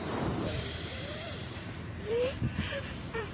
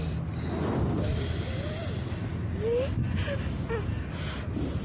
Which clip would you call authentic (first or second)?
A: second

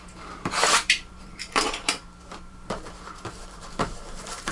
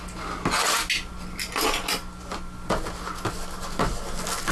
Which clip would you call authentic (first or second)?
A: second